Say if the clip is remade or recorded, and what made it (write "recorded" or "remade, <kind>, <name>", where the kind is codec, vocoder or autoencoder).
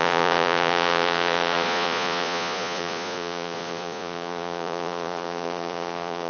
remade, vocoder, Vocos